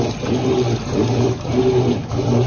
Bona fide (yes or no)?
yes